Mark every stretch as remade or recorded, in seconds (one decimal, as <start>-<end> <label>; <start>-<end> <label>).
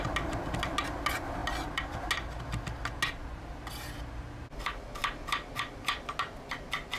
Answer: 0.0-7.0 recorded